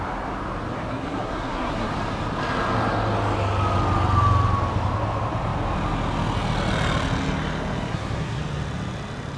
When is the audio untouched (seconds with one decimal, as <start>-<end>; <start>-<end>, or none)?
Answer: 0.0-0.9; 1.9-7.9; 8.4-9.4